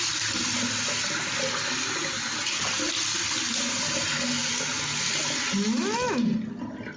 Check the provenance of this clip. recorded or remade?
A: recorded